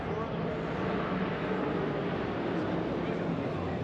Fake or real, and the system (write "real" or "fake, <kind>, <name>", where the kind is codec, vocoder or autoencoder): real